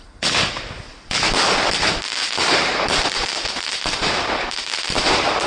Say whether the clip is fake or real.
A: fake